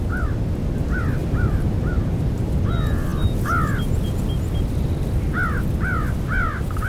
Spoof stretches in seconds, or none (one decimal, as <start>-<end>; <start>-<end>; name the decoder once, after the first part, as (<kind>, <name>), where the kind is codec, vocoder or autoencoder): 1.2-2.6 (vocoder, BigVGAN v2)